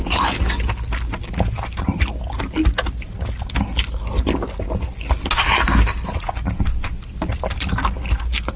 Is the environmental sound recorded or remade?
recorded